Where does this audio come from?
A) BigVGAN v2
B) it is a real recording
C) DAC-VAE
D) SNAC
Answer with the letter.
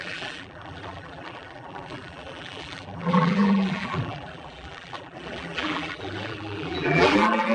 A